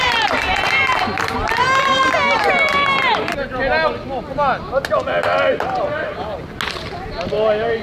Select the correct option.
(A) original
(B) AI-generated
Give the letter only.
A